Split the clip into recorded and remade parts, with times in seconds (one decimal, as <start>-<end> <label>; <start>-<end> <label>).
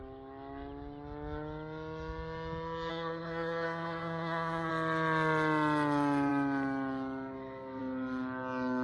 0.0-2.9 recorded; 2.9-4.7 remade; 4.7-8.8 recorded